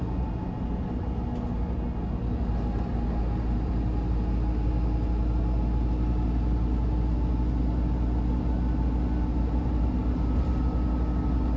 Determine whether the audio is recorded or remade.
recorded